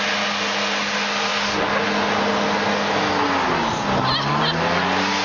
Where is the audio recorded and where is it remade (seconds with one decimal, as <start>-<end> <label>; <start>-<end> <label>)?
0.0-5.2 recorded